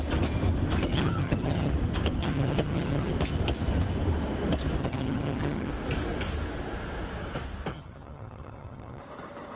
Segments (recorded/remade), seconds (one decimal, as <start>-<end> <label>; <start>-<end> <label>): 0.0-0.9 recorded; 0.9-1.7 remade; 1.7-2.2 recorded; 2.2-3.1 remade; 3.1-4.8 recorded; 4.8-5.7 remade; 5.7-7.7 recorded; 7.7-9.0 remade; 9.0-9.6 recorded